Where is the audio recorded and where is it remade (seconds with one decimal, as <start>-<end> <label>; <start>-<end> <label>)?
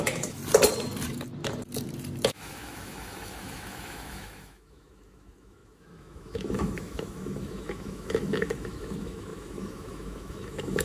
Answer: 0.0-0.4 remade; 0.4-2.3 recorded; 2.3-10.8 remade